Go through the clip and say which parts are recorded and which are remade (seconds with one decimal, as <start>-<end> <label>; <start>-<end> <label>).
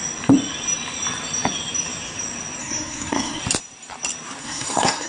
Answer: 0.0-2.6 recorded; 2.6-3.4 remade; 3.4-4.4 recorded; 4.4-5.1 remade